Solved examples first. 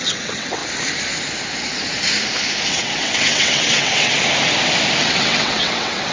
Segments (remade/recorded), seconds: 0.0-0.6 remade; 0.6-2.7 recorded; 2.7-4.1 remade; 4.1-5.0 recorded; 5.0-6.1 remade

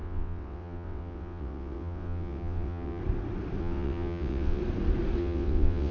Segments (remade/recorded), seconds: 0.0-3.0 remade; 3.0-3.6 recorded; 3.6-4.6 remade; 4.6-5.2 recorded; 5.2-5.9 remade

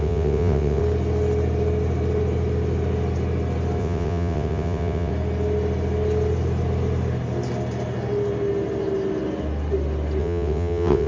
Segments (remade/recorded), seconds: 0.0-0.8 remade; 0.8-3.8 recorded; 3.8-5.1 remade; 5.1-10.2 recorded; 10.2-11.1 remade

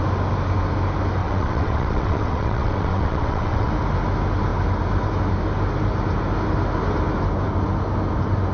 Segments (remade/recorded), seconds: 0.0-1.2 recorded; 1.2-3.7 remade; 3.7-8.5 recorded